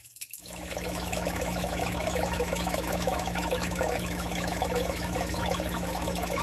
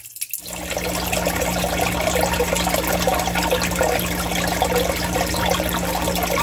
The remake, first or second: first